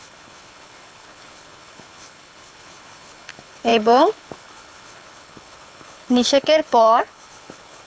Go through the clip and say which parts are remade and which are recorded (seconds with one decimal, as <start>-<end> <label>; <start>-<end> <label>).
0.0-7.9 remade